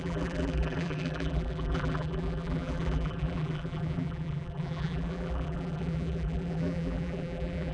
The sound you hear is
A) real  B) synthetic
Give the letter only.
B